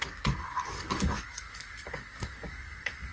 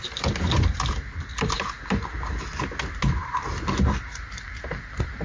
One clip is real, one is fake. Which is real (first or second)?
second